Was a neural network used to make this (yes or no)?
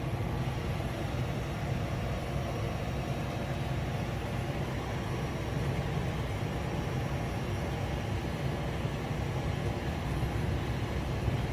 no